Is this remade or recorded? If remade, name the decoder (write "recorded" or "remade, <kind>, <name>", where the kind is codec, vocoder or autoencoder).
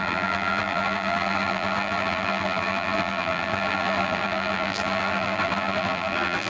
remade, vocoder, BigVGAN v2